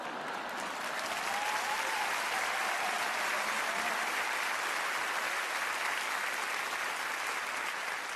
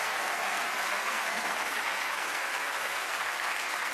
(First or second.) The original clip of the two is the first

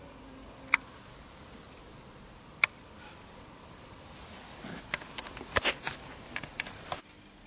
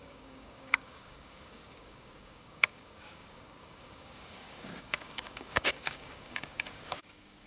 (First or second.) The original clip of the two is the first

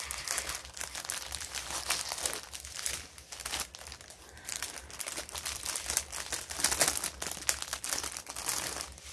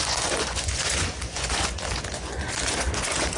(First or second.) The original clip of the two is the first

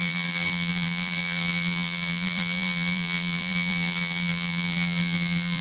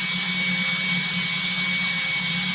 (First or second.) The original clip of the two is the second